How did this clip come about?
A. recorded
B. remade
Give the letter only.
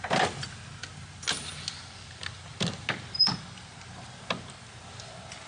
A